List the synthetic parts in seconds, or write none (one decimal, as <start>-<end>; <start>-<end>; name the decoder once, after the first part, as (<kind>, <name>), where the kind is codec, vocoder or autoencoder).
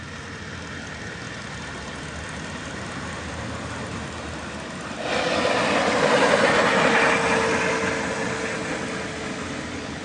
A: none